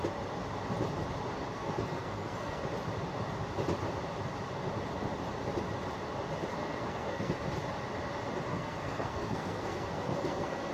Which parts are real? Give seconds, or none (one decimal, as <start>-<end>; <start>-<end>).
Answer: 0.0-1.5; 2.6-6.6; 7.3-8.5